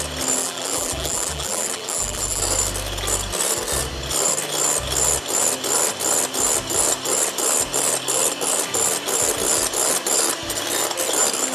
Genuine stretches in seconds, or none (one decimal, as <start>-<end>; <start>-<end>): 0.0-0.4; 2.4-11.5